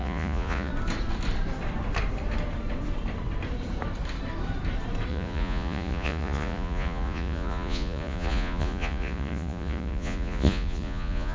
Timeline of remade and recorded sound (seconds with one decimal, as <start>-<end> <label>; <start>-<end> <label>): 0.0-0.7 remade; 0.7-5.1 recorded; 5.1-11.3 remade